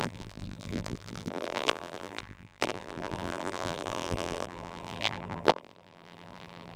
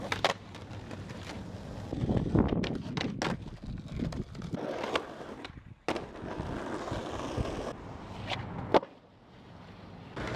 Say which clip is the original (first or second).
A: second